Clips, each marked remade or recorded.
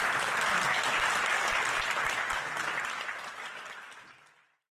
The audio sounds recorded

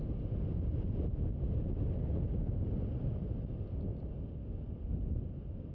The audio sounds recorded